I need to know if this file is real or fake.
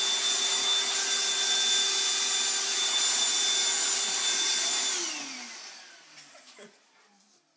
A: real